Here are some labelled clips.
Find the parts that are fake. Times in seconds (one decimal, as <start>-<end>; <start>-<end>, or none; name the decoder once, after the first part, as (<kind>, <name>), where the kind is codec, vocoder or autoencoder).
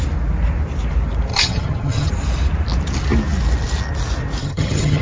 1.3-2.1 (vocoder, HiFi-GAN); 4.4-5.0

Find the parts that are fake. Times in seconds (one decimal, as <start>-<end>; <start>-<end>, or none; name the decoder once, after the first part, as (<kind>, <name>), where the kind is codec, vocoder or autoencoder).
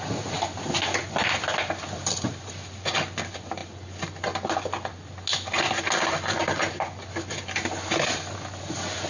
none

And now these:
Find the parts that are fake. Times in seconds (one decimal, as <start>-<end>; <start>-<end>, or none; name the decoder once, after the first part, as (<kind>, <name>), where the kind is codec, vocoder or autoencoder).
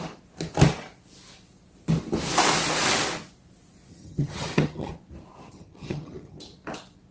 3.9-4.9 (vocoder, HiFi-GAN); 5.5-6.4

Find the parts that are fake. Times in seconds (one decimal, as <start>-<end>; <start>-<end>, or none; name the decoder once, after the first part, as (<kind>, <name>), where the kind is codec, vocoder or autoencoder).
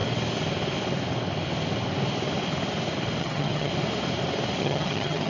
3.2-3.7 (vocoder, HiFi-GAN); 4.6-5.3